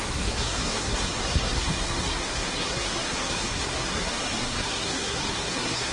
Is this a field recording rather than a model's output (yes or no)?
no